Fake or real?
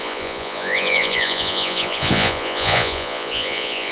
fake